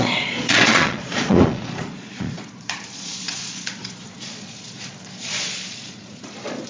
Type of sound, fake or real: fake